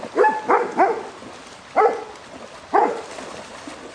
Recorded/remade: recorded